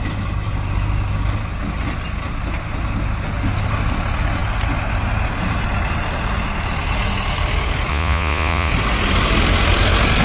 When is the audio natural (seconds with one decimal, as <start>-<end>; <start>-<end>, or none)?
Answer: 0.0-7.9; 8.7-10.2